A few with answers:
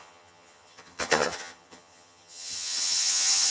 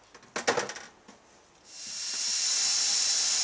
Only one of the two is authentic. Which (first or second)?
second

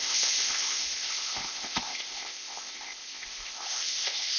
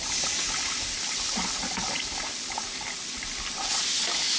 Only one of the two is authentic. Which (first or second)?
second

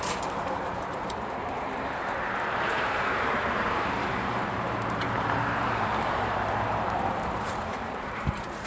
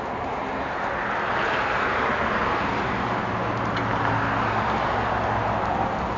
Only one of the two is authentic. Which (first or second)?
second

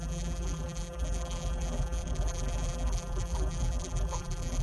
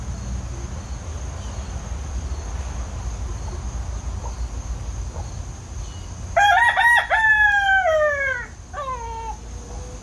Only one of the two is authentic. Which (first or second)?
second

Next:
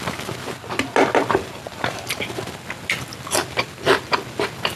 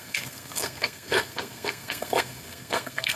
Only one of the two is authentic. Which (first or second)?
first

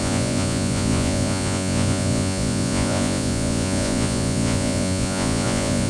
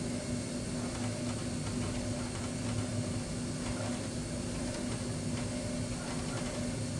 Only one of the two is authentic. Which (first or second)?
second